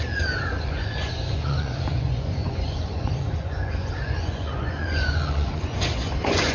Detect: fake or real fake